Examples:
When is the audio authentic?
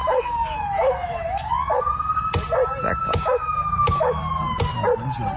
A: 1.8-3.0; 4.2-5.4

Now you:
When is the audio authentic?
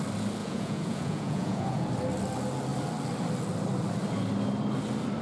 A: 0.0-0.4; 1.9-5.2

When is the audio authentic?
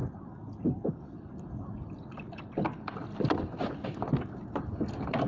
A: 0.0-0.6; 3.0-4.0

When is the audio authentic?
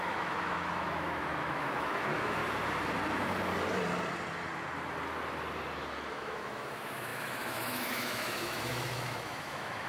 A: 2.4-6.1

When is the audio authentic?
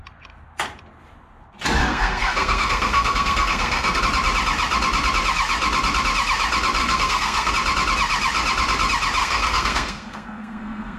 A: 0.0-1.8; 4.0-6.8; 7.5-9.2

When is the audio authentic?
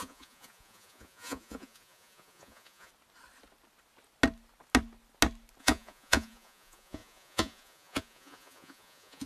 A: 2.9-5.6